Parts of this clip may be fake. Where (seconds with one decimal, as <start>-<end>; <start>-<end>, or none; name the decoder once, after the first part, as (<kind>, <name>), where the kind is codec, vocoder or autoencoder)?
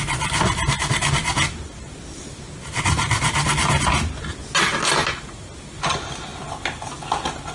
none